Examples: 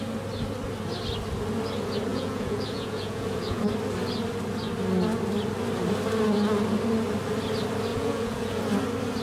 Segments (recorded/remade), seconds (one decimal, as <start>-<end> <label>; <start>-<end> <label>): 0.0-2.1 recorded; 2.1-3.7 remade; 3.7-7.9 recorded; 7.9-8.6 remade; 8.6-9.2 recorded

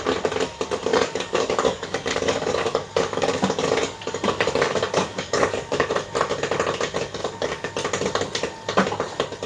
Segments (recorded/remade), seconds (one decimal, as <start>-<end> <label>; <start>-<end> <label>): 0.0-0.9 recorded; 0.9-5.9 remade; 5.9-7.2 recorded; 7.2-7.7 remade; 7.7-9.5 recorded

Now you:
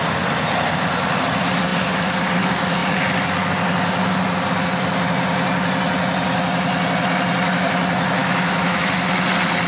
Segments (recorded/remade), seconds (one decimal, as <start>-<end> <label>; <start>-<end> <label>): 0.0-8.2 recorded; 8.2-8.9 remade; 8.9-9.7 recorded

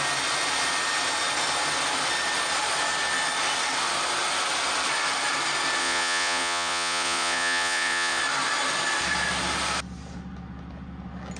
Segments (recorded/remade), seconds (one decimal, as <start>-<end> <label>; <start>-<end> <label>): 0.0-5.8 recorded; 5.8-8.2 remade; 8.2-11.4 recorded

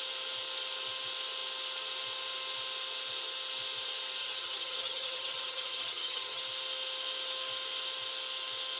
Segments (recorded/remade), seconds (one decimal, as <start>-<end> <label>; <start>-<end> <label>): 0.0-4.2 recorded; 4.2-6.4 remade; 6.4-8.8 recorded

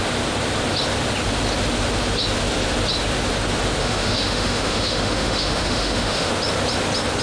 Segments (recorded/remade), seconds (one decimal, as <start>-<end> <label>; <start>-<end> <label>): 0.0-3.8 recorded; 3.8-6.3 remade; 6.3-7.2 recorded